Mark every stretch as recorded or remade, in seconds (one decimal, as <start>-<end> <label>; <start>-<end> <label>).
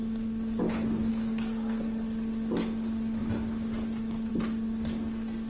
0.0-1.1 recorded; 1.1-1.8 remade; 1.8-5.5 recorded